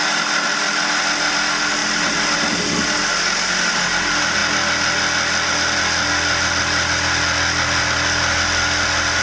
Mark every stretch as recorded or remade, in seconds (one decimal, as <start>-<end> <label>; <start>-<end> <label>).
0.0-9.2 recorded

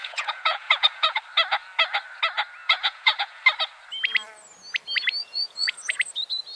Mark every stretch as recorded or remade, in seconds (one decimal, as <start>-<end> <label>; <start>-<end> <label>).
0.0-1.2 remade; 1.2-2.6 recorded; 2.6-3.4 remade; 3.4-5.2 recorded; 5.2-5.9 remade; 5.9-6.6 recorded

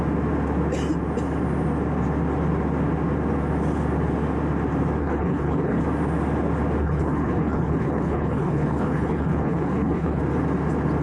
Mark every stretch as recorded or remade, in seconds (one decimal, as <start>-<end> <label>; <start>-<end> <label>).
0.0-5.0 recorded; 5.0-5.8 remade; 5.8-6.8 recorded; 6.8-10.2 remade; 10.2-11.0 recorded

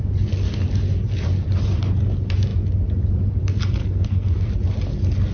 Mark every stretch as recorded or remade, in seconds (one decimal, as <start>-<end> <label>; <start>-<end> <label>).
0.0-3.8 recorded; 3.8-4.5 remade; 4.5-5.3 recorded

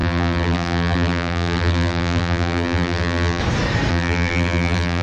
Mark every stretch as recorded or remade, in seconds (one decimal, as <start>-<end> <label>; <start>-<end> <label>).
0.0-3.4 remade; 3.4-3.9 recorded; 3.9-5.0 remade

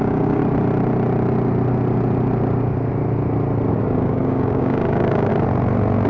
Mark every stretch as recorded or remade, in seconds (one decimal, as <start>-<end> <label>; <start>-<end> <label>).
0.0-0.4 remade; 0.4-3.7 recorded; 3.7-5.3 remade; 5.3-6.1 recorded

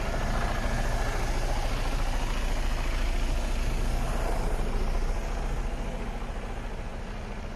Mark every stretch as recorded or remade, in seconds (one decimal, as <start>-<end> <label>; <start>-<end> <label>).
0.0-7.6 recorded